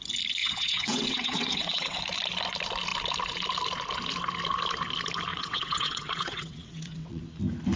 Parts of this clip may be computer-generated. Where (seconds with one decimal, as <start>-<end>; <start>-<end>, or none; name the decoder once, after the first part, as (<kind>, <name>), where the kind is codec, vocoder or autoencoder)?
0.4-2.0 (vocoder, WaveNeXt); 5.3-7.2